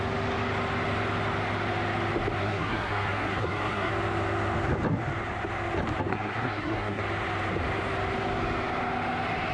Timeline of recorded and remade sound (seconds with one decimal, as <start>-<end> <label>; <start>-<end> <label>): 0.0-2.4 recorded; 2.4-3.9 remade; 3.9-6.1 recorded; 6.1-7.0 remade; 7.0-9.5 recorded